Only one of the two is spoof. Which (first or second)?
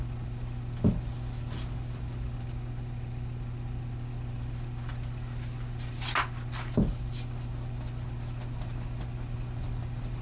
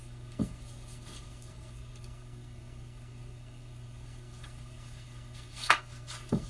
second